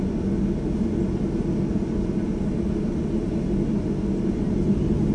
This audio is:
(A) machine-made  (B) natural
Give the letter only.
B